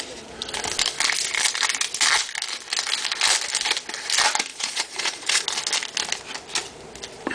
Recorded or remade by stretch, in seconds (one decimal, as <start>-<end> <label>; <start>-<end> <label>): 0.0-4.5 recorded; 4.5-5.4 remade; 5.4-7.3 recorded